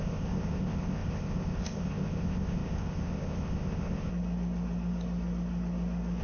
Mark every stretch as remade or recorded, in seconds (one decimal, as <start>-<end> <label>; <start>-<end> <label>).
0.0-4.1 remade; 4.1-6.2 recorded